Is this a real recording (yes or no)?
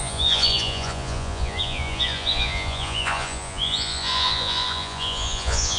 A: no